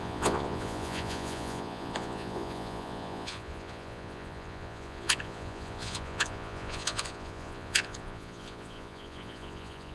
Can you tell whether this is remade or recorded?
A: remade